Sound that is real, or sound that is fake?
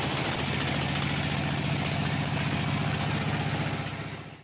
real